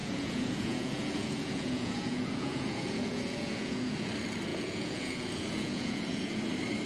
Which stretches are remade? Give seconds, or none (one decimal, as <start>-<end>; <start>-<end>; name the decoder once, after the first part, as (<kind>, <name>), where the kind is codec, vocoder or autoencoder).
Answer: 0.0-4.1 (vocoder, Vocos); 4.5-6.4